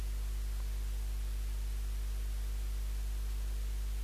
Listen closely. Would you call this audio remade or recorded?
recorded